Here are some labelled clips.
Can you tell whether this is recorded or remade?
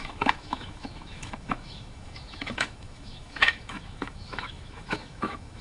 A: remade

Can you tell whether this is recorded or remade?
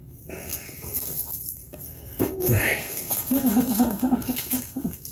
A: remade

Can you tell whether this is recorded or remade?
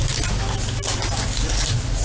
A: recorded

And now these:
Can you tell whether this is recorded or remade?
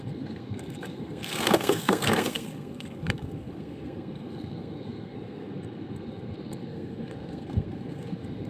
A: remade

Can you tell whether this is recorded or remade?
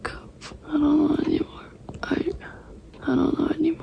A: recorded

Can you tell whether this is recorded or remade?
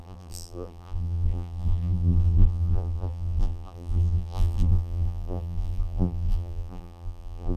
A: remade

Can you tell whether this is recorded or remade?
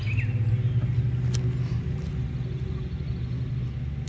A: recorded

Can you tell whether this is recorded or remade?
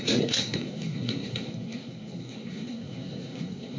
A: remade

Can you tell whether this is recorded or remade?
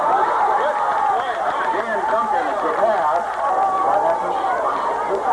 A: recorded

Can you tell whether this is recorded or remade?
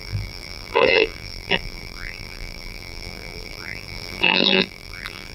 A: remade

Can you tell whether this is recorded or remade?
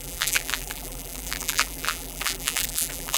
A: remade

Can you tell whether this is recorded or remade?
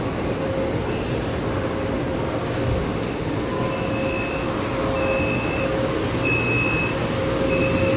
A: recorded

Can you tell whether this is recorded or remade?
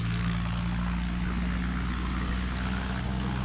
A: recorded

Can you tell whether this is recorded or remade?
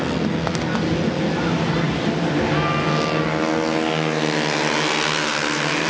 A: recorded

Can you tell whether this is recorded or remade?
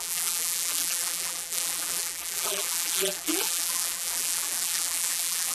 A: remade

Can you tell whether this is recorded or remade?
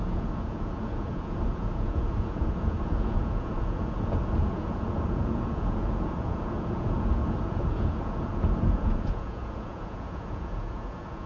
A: remade